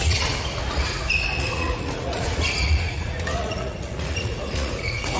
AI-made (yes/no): yes